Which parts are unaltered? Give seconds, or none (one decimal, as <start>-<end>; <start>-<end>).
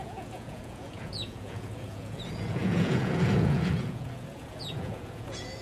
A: none